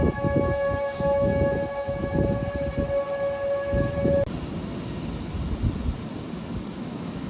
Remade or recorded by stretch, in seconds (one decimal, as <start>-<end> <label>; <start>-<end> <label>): 0.0-2.4 remade; 2.4-6.8 recorded; 6.8-7.3 remade